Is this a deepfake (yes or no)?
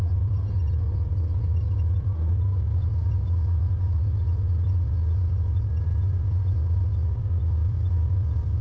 yes